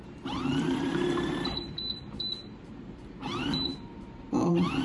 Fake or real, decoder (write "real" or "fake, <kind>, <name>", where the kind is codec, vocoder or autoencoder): fake, vocoder, BigVGAN v2